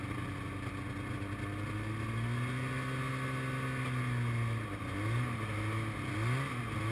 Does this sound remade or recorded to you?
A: recorded